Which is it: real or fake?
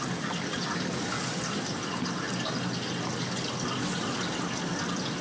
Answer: real